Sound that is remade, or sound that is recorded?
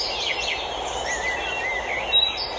recorded